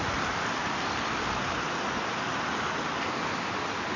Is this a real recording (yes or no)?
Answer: yes